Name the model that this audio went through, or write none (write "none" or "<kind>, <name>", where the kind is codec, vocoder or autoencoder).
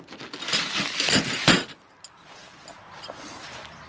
none